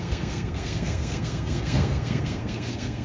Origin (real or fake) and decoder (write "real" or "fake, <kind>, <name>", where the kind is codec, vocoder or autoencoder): fake, codec, SNAC